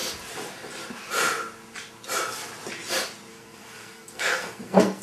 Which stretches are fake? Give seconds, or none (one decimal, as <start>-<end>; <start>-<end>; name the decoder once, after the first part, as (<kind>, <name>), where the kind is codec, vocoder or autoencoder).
3.3-5.0 (codec, SNAC)